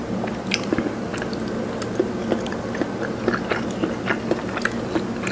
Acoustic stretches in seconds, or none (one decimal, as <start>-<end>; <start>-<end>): 0.0-5.3